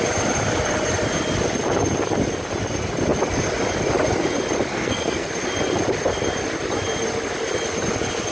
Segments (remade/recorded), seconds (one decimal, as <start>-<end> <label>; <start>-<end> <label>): 0.0-4.7 recorded; 4.7-5.3 remade; 5.3-8.3 recorded